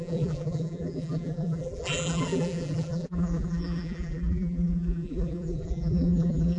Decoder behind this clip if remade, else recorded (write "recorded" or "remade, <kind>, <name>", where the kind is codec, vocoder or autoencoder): remade, vocoder, BigVGAN v2